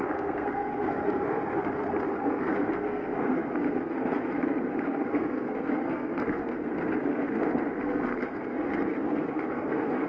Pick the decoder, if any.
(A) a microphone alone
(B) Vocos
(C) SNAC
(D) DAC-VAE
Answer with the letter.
C